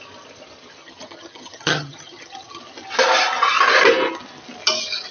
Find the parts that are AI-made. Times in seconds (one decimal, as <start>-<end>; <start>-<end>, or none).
0.8-2.6

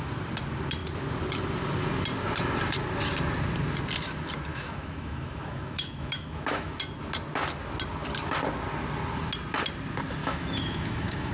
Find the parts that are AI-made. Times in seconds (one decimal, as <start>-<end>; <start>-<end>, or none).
4.5-6.8; 10.2-11.3

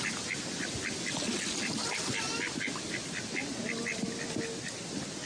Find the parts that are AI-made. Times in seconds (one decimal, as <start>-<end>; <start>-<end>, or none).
none